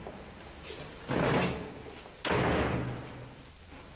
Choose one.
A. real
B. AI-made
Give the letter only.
B